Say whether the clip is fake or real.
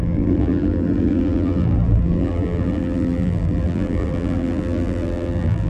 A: fake